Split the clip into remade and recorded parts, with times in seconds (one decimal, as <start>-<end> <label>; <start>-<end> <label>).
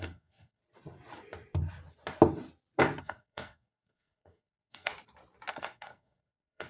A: 0.0-0.6 remade; 0.6-3.0 recorded; 3.0-4.9 remade; 4.9-5.5 recorded; 5.5-6.7 remade